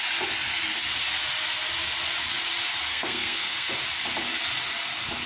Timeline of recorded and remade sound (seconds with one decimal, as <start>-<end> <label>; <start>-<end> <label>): 0.0-2.9 recorded; 2.9-3.7 remade; 3.7-5.3 recorded